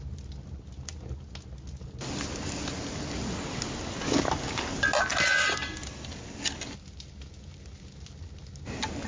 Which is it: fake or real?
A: real